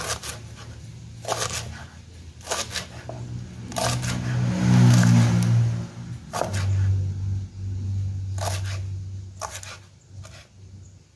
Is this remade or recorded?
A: recorded